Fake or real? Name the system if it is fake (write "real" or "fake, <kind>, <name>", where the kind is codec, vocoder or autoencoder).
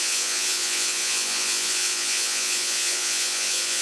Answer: fake, vocoder, Vocos